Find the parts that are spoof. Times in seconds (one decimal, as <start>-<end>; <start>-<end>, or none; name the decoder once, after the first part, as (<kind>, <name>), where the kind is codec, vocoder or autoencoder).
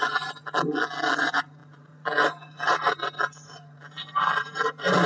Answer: 0.0-0.4 (vocoder, BigVGAN v2); 1.2-5.1